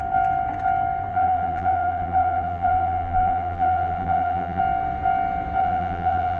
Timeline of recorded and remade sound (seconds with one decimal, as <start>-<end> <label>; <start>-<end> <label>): 0.0-1.1 recorded; 1.1-4.6 remade; 4.6-5.6 recorded; 5.6-6.4 remade